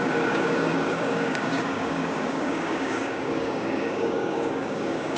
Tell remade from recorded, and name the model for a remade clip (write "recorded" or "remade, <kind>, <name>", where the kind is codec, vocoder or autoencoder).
remade, codec, DAC